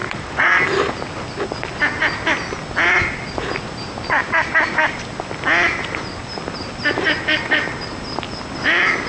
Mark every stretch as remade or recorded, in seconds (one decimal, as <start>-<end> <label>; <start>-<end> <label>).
0.0-0.6 remade; 0.6-9.1 recorded